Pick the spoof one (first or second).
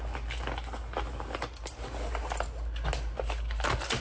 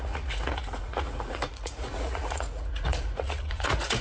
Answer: second